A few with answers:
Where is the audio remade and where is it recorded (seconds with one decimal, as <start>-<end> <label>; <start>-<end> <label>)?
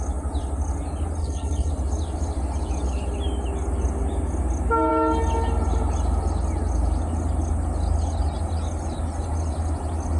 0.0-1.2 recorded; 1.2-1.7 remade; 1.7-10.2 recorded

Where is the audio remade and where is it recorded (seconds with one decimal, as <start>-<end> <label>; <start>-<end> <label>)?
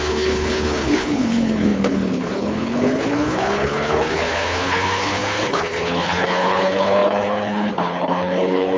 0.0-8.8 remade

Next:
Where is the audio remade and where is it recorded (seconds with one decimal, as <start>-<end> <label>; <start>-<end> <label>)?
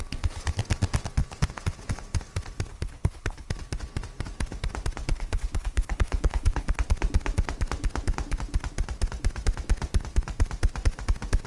0.0-2.7 recorded; 2.7-3.5 remade; 3.5-5.1 recorded; 5.1-6.8 remade; 6.8-11.5 recorded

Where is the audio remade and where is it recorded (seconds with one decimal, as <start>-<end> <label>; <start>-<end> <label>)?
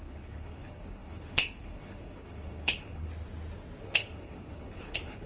0.0-3.1 remade; 3.1-3.8 recorded; 3.8-5.3 remade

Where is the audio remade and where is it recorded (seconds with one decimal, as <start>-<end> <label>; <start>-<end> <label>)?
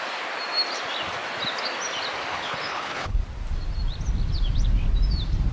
0.0-2.3 recorded; 2.3-3.2 remade; 3.2-5.5 recorded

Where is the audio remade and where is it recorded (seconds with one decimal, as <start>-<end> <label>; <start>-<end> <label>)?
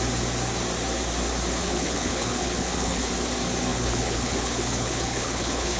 0.0-1.6 recorded; 1.6-3.1 remade; 3.1-3.7 recorded; 3.7-5.8 remade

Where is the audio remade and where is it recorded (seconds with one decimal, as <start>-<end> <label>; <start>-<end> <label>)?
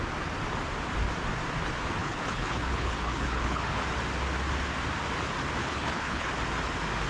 0.0-2.0 recorded; 2.0-3.8 remade; 3.8-5.6 recorded; 5.6-6.3 remade; 6.3-7.1 recorded